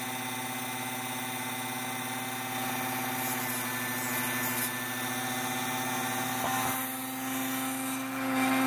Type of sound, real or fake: real